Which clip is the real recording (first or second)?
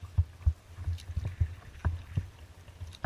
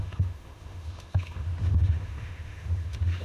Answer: first